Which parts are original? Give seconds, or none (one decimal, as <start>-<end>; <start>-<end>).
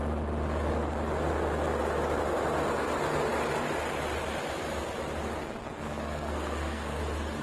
0.0-5.4; 7.0-7.4